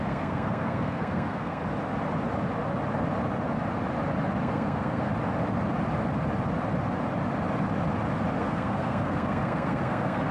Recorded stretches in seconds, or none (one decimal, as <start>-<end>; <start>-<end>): 1.6-4.4; 5.1-8.4